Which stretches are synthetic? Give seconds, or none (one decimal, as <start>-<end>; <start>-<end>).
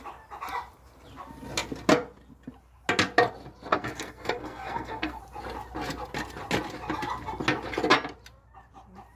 3.7-5.2